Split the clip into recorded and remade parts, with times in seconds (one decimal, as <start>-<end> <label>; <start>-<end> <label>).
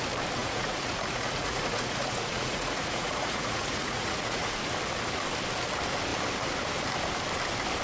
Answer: 0.0-0.4 recorded; 0.4-4.6 remade; 4.6-7.8 recorded